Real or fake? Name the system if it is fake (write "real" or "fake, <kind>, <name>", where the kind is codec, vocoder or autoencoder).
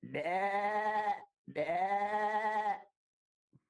real